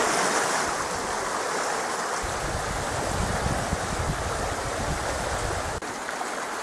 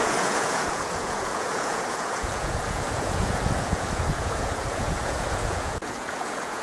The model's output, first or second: second